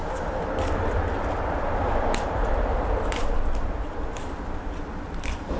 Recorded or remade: remade